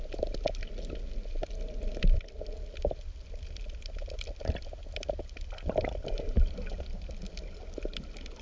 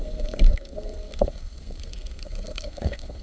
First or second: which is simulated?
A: second